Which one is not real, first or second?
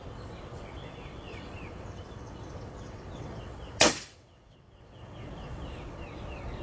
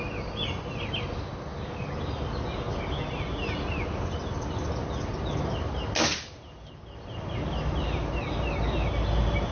first